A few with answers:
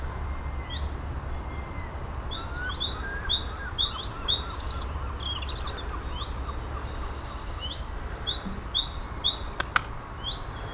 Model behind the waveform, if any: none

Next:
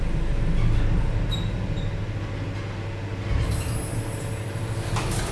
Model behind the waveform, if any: none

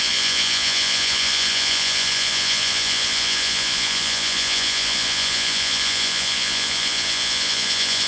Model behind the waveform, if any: vocoder, Vocos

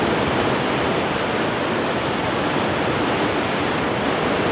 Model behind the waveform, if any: none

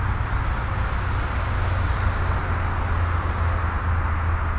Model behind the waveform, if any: none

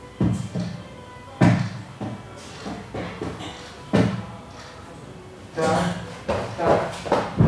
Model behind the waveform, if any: none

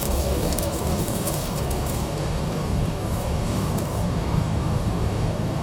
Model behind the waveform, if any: codec, DAC